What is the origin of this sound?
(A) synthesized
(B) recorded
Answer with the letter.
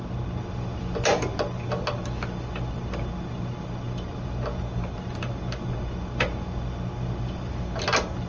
B